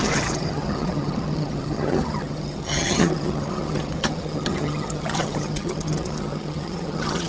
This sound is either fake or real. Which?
fake